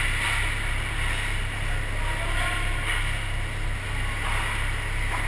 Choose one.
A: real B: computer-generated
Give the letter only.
A